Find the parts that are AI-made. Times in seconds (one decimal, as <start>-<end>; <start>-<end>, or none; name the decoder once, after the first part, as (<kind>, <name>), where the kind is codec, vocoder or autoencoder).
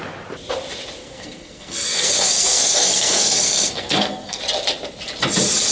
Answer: 1.0-4.4 (codec, SNAC)